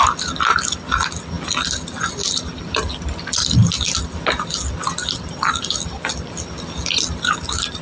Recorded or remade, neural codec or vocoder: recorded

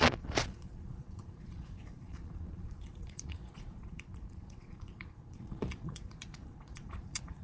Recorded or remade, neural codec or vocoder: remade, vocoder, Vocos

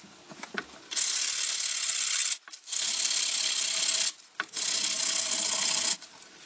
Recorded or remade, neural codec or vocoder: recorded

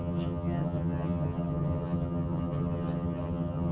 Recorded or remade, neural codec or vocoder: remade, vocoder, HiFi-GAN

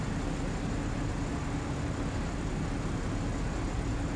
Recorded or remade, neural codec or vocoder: recorded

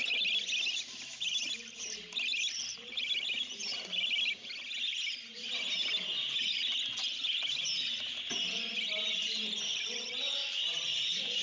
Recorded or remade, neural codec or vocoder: recorded